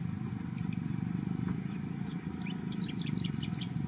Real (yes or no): yes